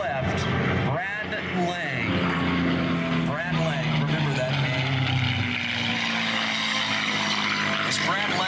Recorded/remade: recorded